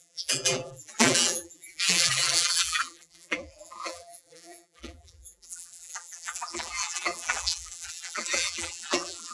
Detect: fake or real fake